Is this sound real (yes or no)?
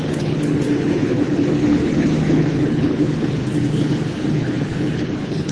no